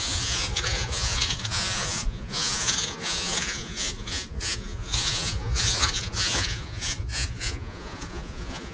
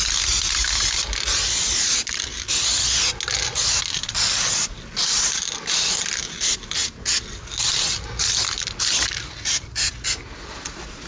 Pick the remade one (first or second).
first